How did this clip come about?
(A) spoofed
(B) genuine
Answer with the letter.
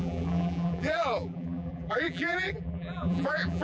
A